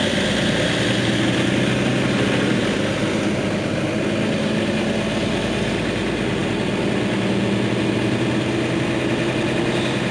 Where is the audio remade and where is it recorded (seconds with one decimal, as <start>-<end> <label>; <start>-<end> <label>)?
0.0-10.1 recorded